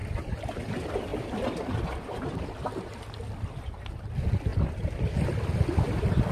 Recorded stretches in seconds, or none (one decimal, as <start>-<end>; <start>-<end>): 0.6-1.1; 3.6-4.5